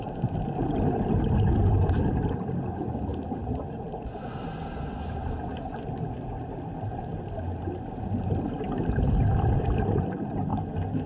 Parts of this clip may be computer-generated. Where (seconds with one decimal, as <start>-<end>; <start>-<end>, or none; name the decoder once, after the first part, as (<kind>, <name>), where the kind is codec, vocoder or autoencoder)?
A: none